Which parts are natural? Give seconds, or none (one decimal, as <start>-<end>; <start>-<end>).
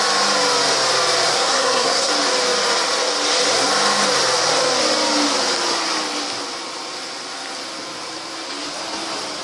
0.0-1.3; 2.1-9.4